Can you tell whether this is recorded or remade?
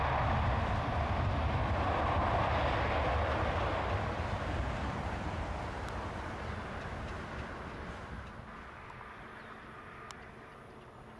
recorded